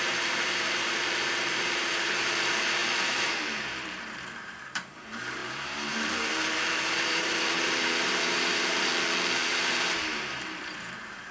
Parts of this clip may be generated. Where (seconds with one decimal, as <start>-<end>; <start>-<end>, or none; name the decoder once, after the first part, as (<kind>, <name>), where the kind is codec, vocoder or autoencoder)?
0.0-8.9 (vocoder, BigVGAN v2); 9.4-11.3